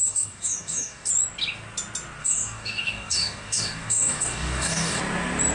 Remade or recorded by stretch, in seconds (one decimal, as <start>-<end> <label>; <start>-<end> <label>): 0.0-1.1 remade; 1.1-2.2 recorded; 2.2-5.0 remade; 5.0-5.5 recorded